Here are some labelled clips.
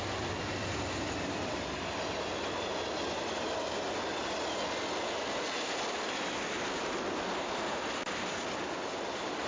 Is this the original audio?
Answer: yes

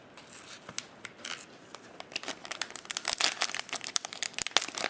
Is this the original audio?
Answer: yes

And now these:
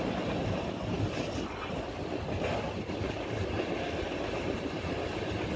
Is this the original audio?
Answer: yes